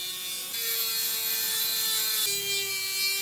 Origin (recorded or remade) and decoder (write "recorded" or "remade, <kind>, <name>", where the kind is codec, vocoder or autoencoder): recorded